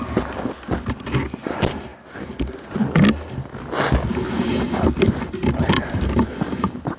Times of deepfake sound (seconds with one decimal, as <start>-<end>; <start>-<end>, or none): 0.0-1.9; 5.3-7.0